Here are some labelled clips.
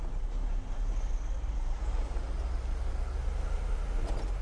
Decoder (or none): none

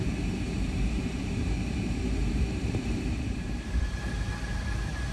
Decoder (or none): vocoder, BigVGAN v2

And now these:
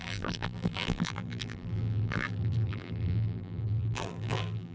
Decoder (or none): vocoder, BigVGAN v2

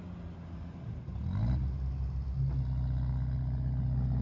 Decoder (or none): none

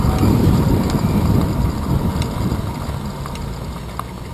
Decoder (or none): none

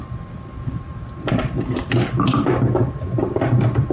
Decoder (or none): vocoder, BigVGAN v2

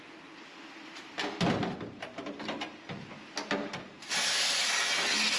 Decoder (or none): none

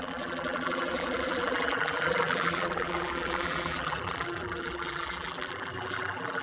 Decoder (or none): vocoder, BigVGAN v2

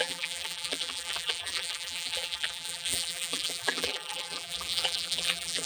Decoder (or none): vocoder, BigVGAN v2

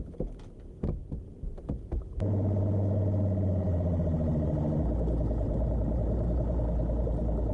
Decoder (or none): none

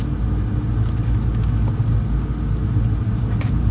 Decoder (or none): none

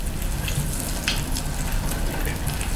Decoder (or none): none